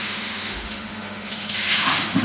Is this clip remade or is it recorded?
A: remade